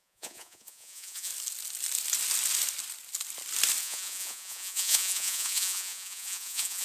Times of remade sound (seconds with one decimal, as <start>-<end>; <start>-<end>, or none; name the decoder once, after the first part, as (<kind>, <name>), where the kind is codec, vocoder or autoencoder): 0.0-1.3 (vocoder, Vocos); 3.8-6.8